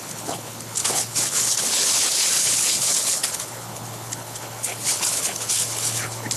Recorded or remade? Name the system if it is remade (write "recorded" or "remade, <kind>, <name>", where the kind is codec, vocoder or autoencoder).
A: remade, codec, HILCodec